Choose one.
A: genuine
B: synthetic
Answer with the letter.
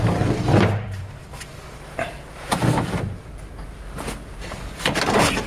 B